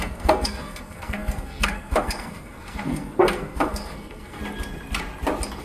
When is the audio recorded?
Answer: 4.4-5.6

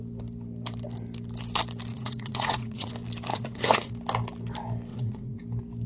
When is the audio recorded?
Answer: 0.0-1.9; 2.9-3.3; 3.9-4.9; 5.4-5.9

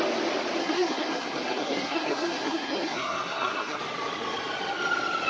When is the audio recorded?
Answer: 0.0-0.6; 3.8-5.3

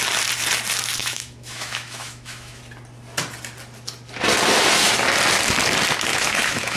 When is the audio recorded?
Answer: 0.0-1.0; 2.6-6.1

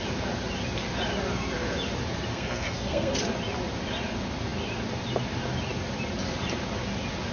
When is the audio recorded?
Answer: 0.0-2.3; 3.2-7.3